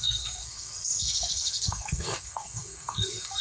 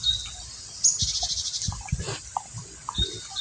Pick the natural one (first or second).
second